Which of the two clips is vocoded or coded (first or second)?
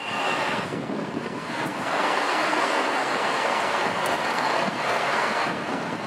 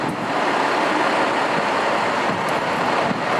first